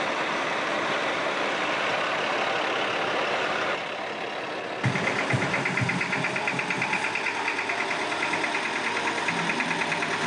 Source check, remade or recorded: recorded